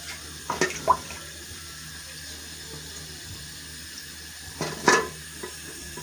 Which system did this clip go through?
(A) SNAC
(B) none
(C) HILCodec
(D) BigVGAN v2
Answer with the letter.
D